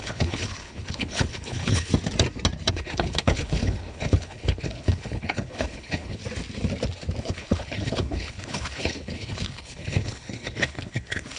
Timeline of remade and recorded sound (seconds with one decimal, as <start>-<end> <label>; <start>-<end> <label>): 0.0-1.9 remade; 1.9-2.7 recorded; 2.7-6.2 remade; 6.2-7.2 recorded; 7.2-11.4 remade